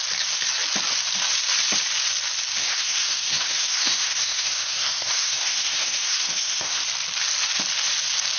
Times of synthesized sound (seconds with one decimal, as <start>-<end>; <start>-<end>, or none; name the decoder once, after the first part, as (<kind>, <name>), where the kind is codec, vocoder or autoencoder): 2.6-6.8 (codec, SNAC)